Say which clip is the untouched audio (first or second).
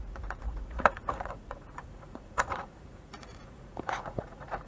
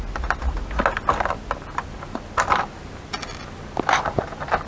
second